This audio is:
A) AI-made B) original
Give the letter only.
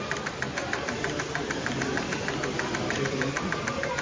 A